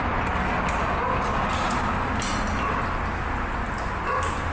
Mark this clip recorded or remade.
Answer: recorded